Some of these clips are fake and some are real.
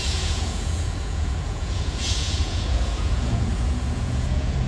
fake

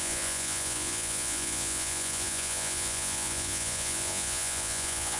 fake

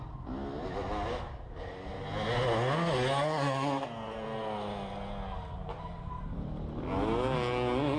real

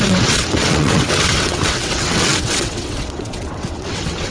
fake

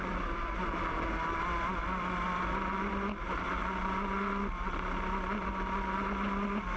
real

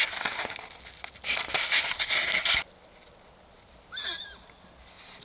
real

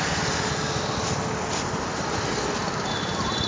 real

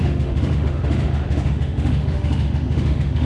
fake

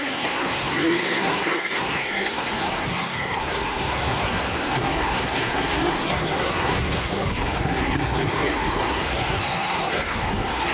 fake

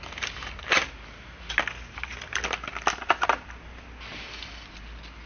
real